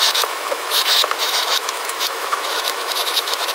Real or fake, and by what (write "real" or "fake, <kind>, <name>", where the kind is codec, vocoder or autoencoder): fake, autoencoder, DAC-VAE